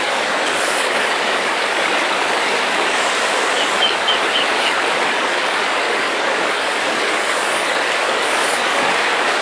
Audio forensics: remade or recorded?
remade